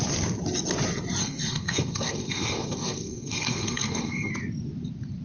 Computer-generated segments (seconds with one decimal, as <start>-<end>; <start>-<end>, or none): 1.2-4.3